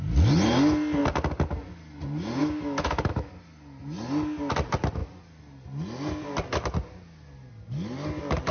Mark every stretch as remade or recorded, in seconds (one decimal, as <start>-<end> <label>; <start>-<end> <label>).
0.0-2.4 recorded; 2.4-3.3 remade; 3.3-8.5 recorded